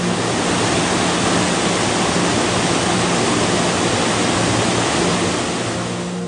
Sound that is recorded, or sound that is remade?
recorded